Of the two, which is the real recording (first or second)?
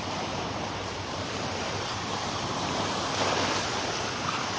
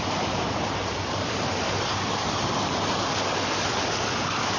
second